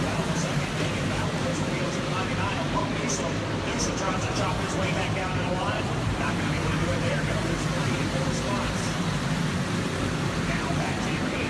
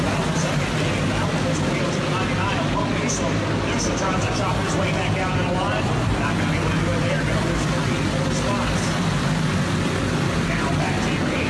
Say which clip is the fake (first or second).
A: first